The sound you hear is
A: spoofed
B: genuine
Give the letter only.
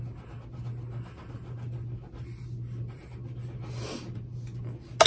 B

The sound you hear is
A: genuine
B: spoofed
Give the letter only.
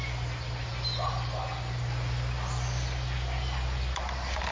A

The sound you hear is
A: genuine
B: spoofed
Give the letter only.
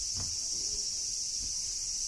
A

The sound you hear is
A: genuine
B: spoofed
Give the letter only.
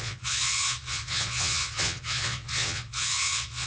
B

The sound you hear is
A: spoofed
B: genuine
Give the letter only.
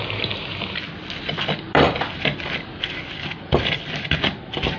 B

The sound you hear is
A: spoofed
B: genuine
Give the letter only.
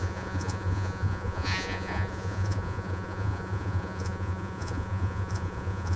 A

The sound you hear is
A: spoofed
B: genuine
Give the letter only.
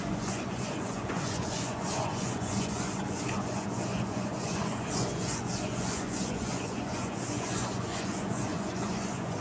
A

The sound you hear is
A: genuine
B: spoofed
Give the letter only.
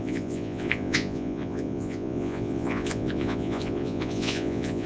B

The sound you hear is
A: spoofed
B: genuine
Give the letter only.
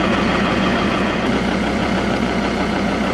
A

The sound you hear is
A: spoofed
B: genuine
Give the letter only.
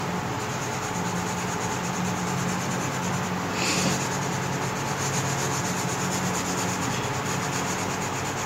B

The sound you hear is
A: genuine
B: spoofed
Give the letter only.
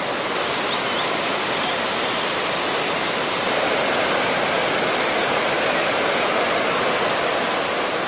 A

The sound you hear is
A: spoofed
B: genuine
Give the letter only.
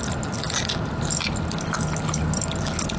B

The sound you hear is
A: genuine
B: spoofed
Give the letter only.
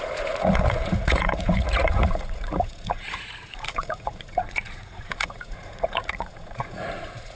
B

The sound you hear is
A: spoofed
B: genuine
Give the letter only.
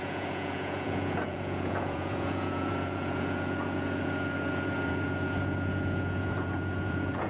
A